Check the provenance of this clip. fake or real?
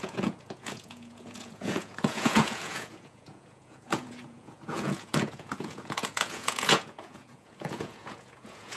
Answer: fake